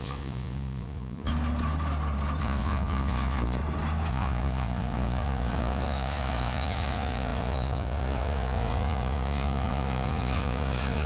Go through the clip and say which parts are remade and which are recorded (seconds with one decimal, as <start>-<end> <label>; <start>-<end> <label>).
0.0-1.3 remade; 1.3-2.4 recorded; 2.4-3.6 remade; 3.6-4.1 recorded; 4.1-11.1 remade